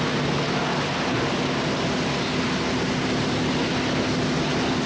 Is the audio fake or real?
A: real